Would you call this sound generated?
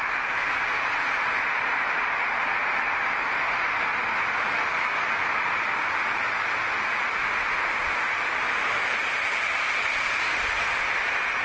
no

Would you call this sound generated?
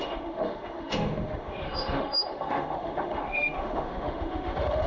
yes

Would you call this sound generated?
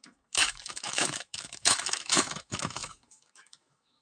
yes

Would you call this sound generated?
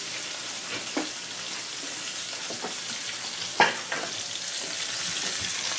no